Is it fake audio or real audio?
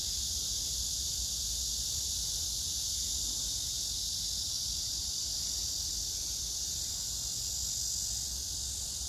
real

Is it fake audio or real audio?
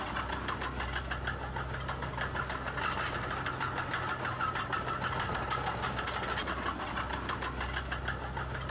real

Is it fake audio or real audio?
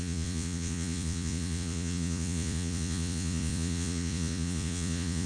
fake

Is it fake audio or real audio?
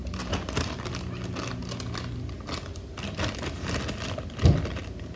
real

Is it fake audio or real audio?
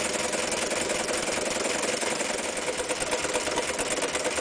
real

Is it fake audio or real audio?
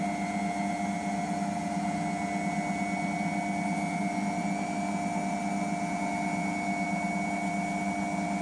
real